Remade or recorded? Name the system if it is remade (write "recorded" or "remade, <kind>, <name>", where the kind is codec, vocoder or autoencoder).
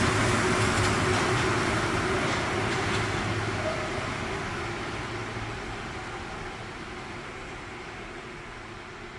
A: recorded